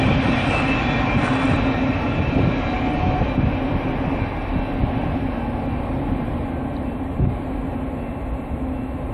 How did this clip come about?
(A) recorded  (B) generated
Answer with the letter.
A